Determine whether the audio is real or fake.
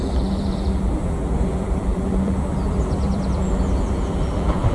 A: fake